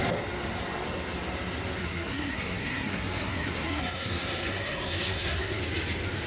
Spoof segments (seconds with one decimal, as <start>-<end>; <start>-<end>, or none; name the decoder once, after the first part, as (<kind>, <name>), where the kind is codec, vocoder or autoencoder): 1.8-5.6 (codec, SNAC)